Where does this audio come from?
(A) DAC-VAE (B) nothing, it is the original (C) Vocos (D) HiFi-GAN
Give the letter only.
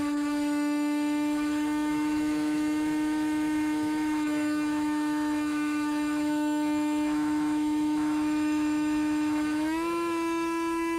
A